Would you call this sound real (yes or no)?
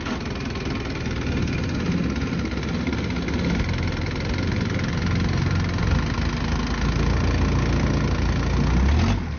yes